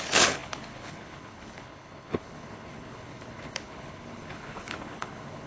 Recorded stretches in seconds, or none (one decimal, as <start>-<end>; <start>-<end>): none